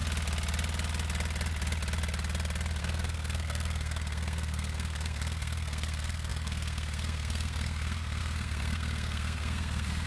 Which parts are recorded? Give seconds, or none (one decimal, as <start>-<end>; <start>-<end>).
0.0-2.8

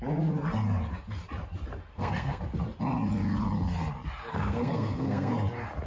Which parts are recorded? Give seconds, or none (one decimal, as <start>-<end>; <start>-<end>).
0.0-1.9; 2.4-4.3; 5.3-5.9

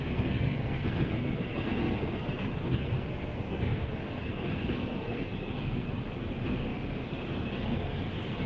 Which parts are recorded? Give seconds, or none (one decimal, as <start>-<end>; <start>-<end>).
none